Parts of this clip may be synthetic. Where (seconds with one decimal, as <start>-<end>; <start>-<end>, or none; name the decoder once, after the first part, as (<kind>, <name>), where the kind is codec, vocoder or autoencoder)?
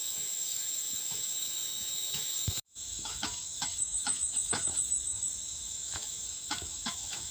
0.0-7.3 (autoencoder, DAC-VAE)